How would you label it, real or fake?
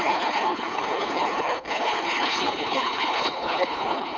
fake